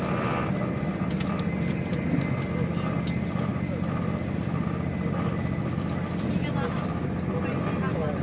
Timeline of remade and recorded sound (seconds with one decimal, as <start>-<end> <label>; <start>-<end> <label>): 0.0-8.2 recorded